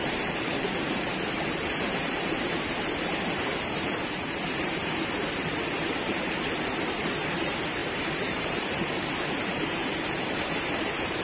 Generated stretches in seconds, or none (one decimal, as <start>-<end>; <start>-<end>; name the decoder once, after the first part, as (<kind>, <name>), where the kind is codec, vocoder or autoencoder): 0.0-11.2 (vocoder, BigVGAN v2)